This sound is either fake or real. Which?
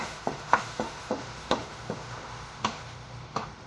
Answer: fake